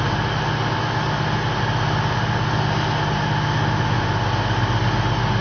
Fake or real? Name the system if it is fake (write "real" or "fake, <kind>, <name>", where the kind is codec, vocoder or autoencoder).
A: real